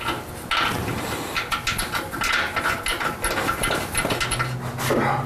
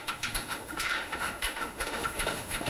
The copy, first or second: second